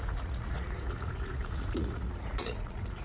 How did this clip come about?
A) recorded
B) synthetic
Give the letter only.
B